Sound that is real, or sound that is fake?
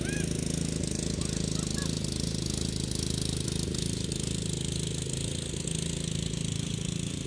real